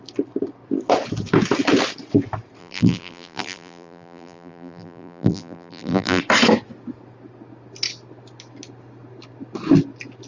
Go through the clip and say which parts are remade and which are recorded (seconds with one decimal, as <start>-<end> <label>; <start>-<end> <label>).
0.0-2.6 recorded; 2.6-6.2 remade; 6.2-10.3 recorded